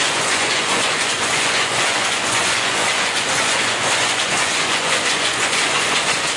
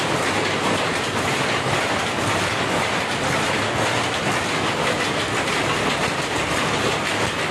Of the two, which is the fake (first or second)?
first